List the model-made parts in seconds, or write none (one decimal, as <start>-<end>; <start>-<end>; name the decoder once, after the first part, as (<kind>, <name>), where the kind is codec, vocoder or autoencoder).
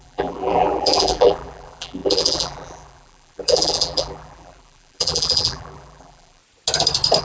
0.0-6.4 (vocoder, BigVGAN v2)